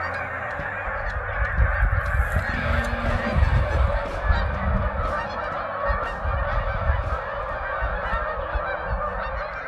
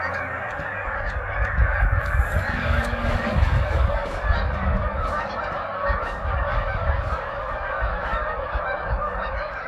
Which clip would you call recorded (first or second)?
first